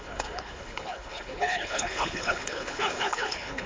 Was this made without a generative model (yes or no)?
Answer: no